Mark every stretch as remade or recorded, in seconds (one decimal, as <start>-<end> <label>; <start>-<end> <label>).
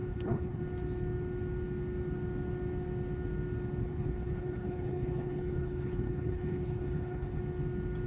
0.0-0.6 remade; 0.6-3.8 recorded; 3.8-7.4 remade; 7.4-8.1 recorded